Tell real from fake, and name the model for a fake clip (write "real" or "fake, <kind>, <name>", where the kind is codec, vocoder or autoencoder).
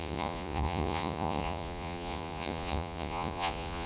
fake, vocoder, Vocos